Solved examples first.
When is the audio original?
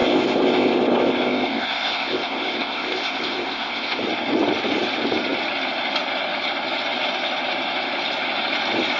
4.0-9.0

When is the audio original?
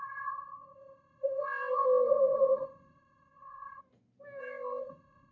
3.8-4.4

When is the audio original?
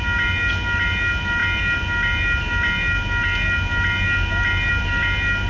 0.0-5.5